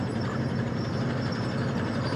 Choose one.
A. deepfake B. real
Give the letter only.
B